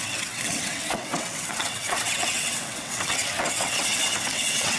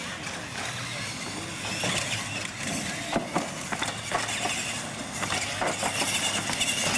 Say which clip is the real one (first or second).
second